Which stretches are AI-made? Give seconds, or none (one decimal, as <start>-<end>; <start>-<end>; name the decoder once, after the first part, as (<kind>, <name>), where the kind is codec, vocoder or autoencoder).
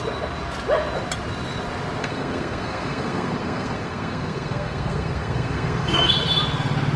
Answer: 2.0-6.2 (codec, SNAC)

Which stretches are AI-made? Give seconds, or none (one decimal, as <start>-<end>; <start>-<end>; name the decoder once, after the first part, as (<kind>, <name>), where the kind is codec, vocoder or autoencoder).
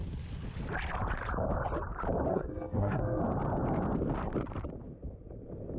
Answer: 2.3-3.2 (codec, SNAC)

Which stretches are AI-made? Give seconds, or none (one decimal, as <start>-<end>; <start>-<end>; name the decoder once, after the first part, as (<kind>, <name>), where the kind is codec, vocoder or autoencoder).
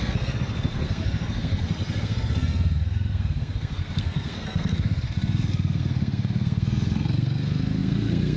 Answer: 0.0-8.4 (codec, SNAC)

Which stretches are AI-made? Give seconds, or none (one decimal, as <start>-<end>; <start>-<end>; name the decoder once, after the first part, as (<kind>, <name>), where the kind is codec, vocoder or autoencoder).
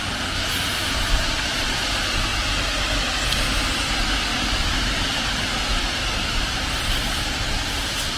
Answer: none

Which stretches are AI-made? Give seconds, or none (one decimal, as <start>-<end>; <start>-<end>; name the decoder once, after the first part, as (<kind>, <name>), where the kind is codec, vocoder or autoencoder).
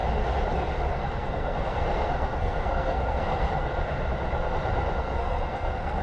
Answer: 0.9-3.7 (codec, SNAC); 5.0-6.0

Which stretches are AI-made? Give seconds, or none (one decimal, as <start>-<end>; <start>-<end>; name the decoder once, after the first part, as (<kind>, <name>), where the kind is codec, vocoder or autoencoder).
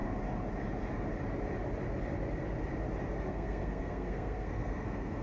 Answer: 3.1-5.2 (codec, SNAC)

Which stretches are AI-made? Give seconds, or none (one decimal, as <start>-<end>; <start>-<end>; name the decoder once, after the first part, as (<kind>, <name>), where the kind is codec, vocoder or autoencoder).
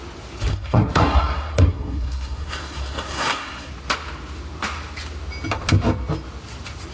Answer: 0.5-3.7 (codec, SNAC)